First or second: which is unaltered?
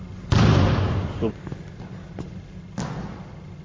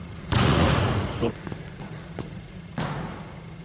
first